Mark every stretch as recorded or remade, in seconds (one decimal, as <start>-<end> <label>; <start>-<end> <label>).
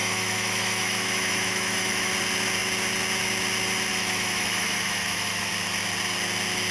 0.0-2.1 remade; 2.1-3.9 recorded; 3.9-5.5 remade; 5.5-6.7 recorded